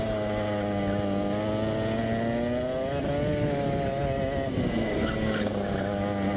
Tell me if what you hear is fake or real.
real